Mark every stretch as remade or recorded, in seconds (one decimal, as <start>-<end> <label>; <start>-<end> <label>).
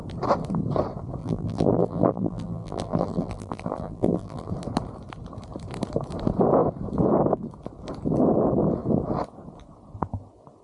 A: 0.0-1.2 recorded; 1.2-4.5 remade; 4.5-10.6 recorded